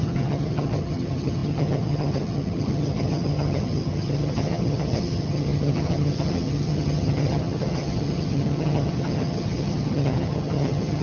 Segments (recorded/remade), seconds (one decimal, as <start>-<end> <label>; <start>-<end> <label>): 0.0-11.0 remade

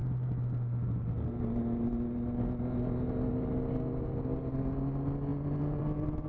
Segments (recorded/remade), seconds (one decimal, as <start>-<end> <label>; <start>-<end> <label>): 0.0-6.3 recorded

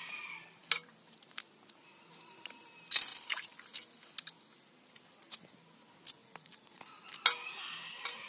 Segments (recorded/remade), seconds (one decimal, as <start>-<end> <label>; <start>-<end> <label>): 0.0-6.2 recorded; 6.2-6.8 remade; 6.8-8.3 recorded

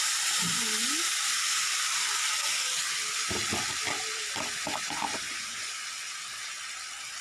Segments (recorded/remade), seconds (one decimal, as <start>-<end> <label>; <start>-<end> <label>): 0.0-5.1 recorded; 5.1-5.7 remade; 5.7-7.2 recorded

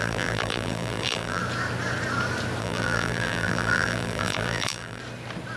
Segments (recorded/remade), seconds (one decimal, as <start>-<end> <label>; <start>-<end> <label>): 0.0-1.4 remade; 1.4-2.6 recorded; 2.6-5.0 remade; 5.0-5.6 recorded